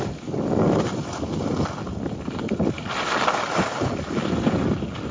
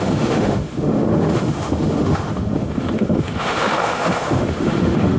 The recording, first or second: first